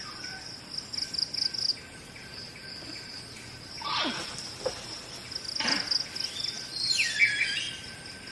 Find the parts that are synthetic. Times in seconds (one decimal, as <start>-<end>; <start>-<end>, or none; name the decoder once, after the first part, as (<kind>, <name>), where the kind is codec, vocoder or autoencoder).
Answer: 1.7-3.2 (vocoder, BigVGAN v2)